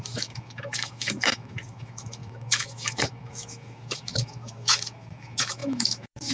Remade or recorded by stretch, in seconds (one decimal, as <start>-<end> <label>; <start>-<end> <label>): 0.0-6.3 remade